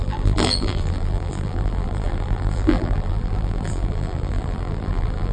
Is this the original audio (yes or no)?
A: no